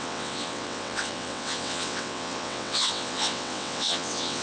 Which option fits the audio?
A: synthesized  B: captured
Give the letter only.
A